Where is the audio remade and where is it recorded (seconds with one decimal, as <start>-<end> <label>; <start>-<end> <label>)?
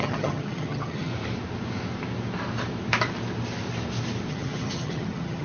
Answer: 0.0-1.1 remade; 1.1-4.3 recorded; 4.3-5.4 remade